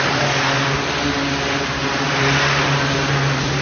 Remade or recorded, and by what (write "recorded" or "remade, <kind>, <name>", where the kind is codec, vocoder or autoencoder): recorded